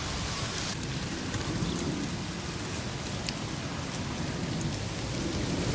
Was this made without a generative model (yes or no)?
yes